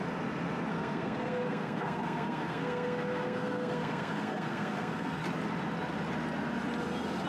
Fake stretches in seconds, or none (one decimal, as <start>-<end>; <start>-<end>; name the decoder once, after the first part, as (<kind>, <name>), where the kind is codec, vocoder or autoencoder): 0.7-5.2 (codec, SNAC)